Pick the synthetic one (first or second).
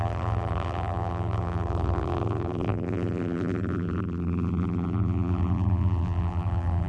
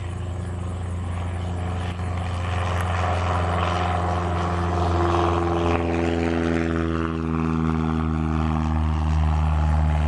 first